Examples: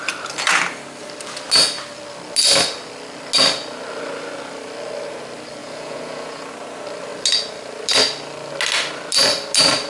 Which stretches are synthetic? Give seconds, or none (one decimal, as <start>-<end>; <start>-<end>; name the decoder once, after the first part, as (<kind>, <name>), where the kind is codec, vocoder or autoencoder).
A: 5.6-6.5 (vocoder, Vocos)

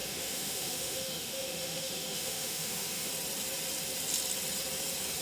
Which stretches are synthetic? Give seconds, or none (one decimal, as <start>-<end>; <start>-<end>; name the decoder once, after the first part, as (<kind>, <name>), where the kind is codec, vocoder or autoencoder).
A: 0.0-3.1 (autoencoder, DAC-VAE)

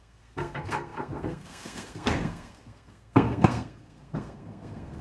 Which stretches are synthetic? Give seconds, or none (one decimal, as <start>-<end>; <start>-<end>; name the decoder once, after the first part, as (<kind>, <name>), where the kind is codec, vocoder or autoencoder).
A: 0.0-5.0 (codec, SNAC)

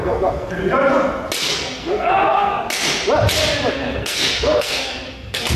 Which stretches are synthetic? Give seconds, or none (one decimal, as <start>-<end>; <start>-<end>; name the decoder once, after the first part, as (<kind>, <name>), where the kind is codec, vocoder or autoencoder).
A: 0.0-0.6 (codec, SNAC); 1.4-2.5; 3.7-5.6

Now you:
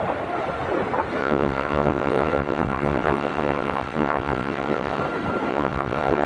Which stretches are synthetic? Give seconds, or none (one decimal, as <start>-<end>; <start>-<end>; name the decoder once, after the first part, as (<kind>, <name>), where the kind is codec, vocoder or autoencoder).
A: 1.2-5.0 (vocoder, WaveNeXt); 5.5-6.3